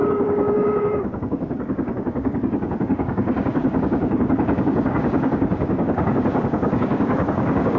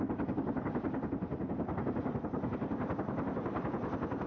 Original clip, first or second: second